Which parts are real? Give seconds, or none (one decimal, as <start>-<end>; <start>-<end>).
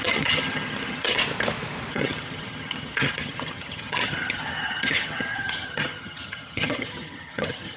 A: 1.2-1.9